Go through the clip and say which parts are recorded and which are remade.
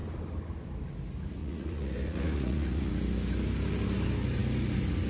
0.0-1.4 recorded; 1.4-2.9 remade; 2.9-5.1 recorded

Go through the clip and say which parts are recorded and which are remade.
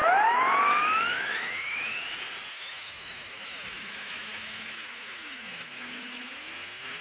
0.0-2.0 remade; 2.0-2.5 recorded; 2.5-7.0 remade